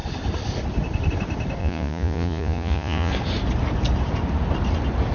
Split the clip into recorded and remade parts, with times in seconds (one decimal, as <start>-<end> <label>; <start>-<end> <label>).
0.0-1.6 recorded; 1.6-3.1 remade; 3.1-5.1 recorded